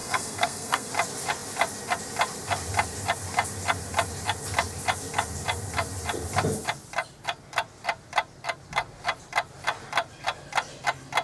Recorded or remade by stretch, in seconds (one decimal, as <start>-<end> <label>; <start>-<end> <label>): 0.0-0.9 remade; 0.9-11.2 recorded